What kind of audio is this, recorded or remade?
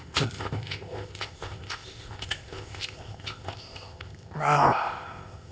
remade